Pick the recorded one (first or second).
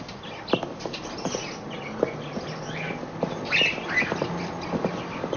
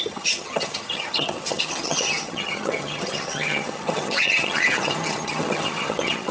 first